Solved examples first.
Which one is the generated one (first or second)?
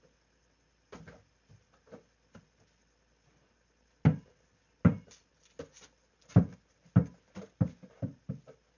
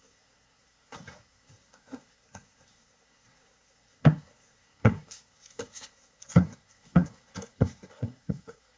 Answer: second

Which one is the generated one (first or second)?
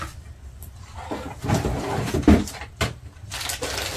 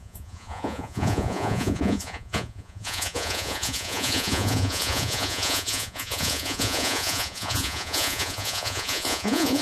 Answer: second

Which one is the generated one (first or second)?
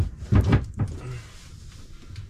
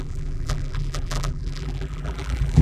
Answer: second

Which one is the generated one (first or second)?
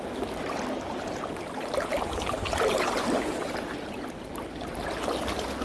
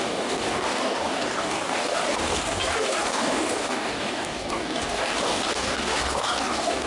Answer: second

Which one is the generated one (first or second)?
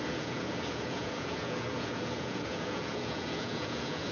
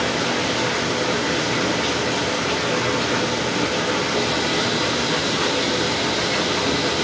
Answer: first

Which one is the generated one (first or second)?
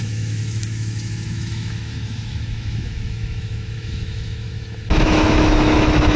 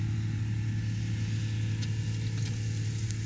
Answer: first